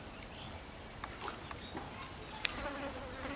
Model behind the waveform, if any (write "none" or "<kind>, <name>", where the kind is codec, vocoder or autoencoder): none